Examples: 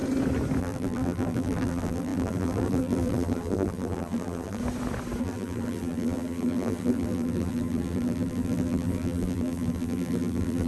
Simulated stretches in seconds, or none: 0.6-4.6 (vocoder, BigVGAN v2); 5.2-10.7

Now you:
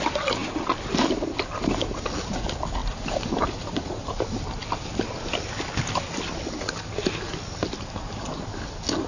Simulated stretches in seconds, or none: none